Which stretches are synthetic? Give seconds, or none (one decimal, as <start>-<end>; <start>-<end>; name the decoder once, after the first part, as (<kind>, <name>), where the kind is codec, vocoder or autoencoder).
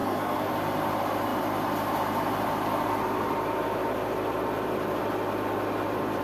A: 0.0-0.5 (codec, SNAC)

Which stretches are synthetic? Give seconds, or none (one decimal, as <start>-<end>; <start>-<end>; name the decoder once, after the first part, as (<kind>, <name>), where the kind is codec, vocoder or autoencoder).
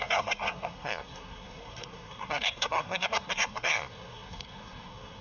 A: 0.0-5.2 (codec, SNAC)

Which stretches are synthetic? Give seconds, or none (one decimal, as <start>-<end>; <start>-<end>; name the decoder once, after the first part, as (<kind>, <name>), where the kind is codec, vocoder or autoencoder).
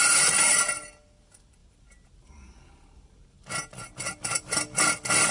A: none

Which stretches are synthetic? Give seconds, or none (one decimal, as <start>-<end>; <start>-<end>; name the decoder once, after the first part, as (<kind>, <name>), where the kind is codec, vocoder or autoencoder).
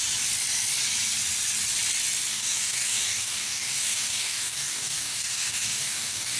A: 2.3-6.4 (codec, DAC)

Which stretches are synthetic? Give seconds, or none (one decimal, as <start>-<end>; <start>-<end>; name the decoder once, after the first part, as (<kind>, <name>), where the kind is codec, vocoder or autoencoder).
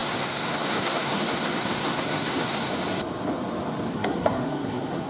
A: 0.0-2.7 (codec, SNAC); 3.9-5.1